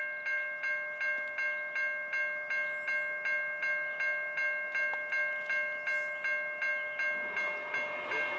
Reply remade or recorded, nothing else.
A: recorded